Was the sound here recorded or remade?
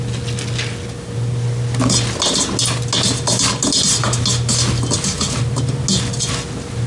recorded